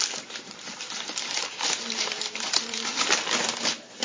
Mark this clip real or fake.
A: fake